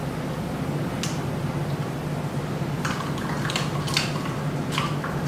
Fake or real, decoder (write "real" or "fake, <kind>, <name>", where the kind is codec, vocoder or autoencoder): real